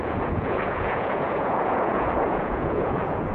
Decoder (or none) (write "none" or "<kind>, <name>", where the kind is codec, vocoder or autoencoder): vocoder, Vocos